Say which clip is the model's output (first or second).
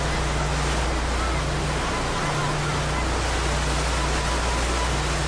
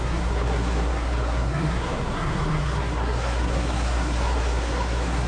second